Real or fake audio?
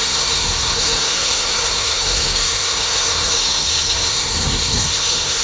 fake